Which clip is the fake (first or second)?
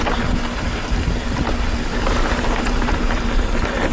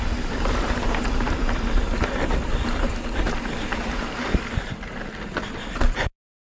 second